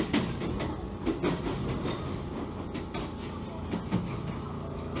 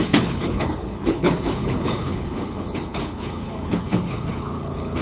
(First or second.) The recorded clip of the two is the first